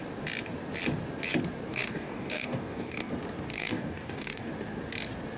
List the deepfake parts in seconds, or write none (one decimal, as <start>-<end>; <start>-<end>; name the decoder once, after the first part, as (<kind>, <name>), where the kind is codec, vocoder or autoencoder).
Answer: 1.7-3.1 (codec, DAC); 3.5-4.5